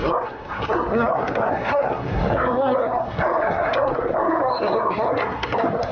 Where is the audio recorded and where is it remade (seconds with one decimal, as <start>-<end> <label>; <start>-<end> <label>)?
0.0-5.9 remade